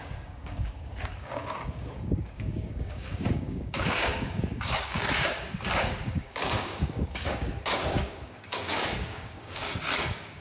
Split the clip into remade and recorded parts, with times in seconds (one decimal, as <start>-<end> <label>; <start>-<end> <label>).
0.0-10.4 remade